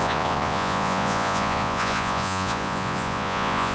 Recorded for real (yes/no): no